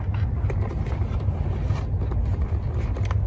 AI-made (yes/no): no